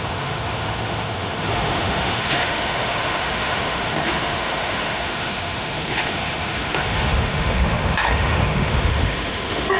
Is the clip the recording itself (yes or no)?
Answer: no